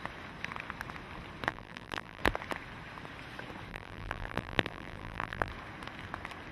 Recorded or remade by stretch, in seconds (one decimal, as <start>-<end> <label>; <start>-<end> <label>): 0.0-1.5 recorded; 1.5-2.2 remade; 2.2-3.7 recorded; 3.7-5.5 remade; 5.5-6.5 recorded